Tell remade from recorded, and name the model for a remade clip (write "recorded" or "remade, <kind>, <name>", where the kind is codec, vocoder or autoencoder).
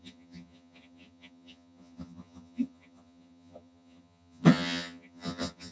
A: remade, vocoder, HiFi-GAN